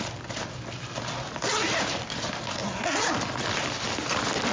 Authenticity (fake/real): real